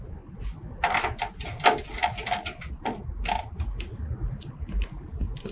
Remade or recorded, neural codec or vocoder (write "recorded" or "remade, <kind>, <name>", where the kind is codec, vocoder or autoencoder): recorded